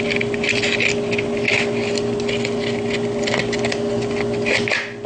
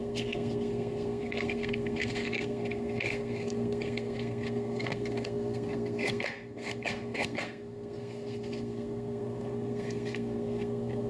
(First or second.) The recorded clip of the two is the first